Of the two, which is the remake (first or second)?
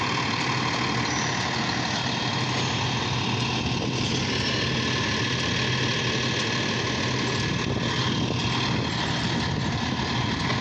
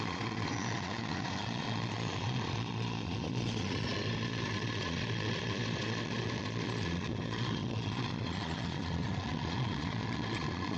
second